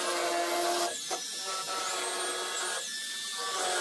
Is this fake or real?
real